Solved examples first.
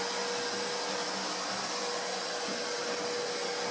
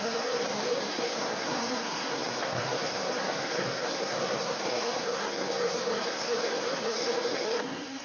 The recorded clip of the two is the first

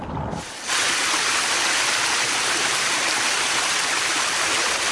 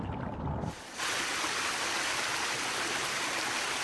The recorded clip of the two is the second